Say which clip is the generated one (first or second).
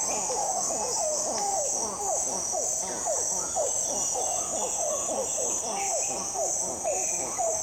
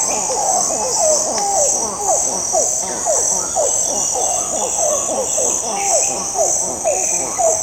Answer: first